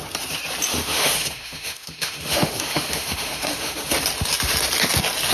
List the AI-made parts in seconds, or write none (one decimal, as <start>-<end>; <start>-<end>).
0.7-3.9